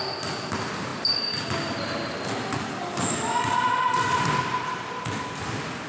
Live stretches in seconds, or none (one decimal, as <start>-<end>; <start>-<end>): 0.0-5.9

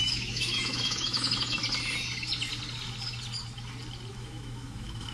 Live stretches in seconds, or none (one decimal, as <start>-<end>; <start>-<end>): 1.6-4.1